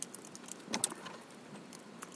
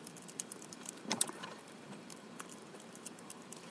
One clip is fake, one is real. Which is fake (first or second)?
second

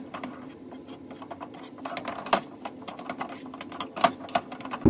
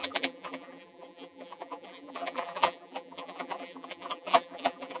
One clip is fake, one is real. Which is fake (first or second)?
second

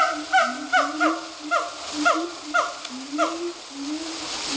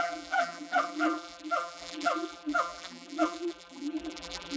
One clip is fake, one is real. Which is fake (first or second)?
second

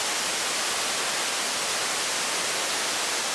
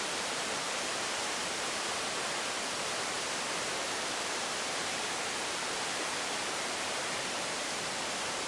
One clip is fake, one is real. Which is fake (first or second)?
second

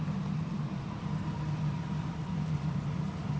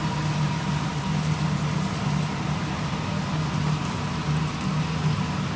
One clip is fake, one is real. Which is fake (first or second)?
first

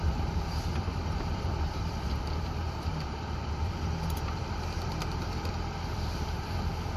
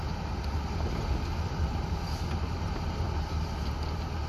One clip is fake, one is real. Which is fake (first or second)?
first